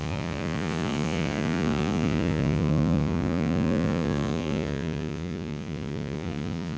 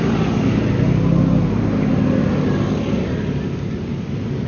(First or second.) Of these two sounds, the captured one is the second